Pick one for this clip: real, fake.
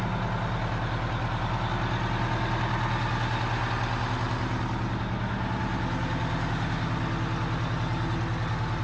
real